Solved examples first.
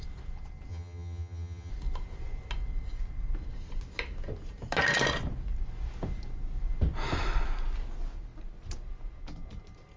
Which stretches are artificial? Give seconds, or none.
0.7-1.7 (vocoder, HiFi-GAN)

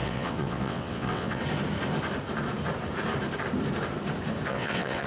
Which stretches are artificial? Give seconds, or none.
0.0-1.4 (vocoder, WaveNeXt); 4.5-5.1

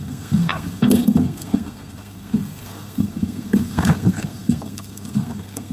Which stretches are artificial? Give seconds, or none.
0.0-5.7 (codec, SNAC)

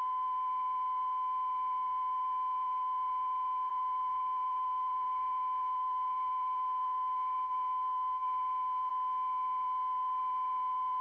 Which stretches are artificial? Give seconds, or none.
3.7-8.9 (autoencoder, DAC-VAE)